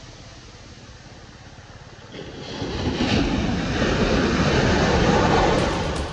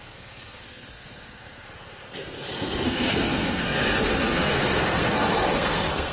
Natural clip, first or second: first